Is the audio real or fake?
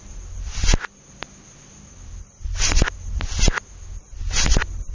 real